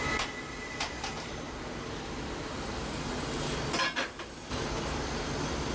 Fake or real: real